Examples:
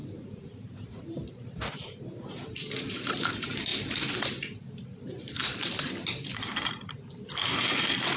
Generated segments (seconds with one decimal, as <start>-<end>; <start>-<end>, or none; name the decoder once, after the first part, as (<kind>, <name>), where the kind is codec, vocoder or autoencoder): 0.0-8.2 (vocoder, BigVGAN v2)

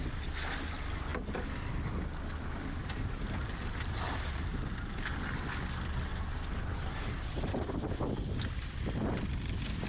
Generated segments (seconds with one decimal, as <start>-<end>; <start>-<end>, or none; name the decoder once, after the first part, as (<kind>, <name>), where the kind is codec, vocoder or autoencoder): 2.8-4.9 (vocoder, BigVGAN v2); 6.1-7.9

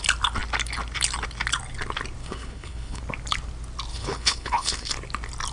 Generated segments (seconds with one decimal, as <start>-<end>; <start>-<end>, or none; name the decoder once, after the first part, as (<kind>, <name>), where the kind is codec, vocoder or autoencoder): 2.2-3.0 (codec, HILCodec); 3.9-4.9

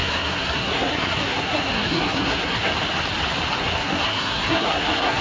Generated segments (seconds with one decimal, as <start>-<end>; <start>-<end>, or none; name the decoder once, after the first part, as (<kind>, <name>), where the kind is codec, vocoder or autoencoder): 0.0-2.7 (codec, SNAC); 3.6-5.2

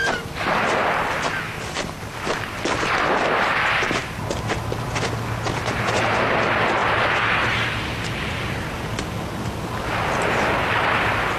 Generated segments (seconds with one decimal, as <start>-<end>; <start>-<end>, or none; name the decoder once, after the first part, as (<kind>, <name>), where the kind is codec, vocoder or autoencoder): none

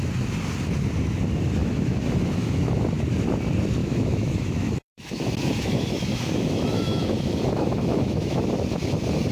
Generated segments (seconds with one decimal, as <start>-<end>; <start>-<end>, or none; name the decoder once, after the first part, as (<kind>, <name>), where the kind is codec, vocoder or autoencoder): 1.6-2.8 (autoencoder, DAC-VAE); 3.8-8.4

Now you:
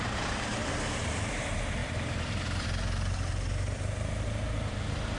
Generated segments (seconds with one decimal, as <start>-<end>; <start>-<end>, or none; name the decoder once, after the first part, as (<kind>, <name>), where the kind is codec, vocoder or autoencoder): 0.0-0.6 (vocoder, BigVGAN v2); 1.3-1.8

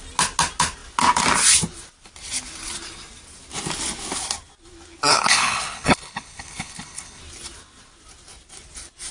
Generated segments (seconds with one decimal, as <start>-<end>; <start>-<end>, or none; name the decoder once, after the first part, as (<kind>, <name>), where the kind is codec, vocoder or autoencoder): 5.1-7.2 (codec, HILCodec)